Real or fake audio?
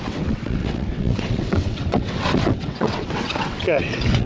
fake